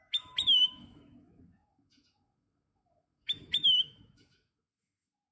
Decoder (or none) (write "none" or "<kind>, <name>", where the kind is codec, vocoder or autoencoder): autoencoder, DAC-VAE